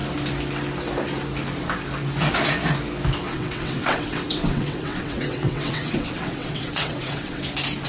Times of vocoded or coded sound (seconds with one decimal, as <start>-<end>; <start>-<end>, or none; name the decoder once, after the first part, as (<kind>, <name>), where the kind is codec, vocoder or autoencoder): 3.3-7.4 (vocoder, WaveNeXt)